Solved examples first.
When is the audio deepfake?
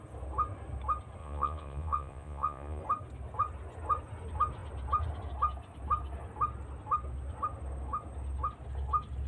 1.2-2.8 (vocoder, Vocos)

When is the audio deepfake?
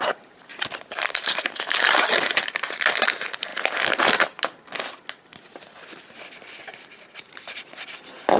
0.0-3.5 (vocoder, BigVGAN v2); 6.8-8.4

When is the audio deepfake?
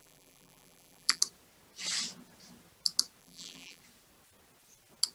0.0-1.2 (vocoder, BigVGAN v2); 3.2-3.8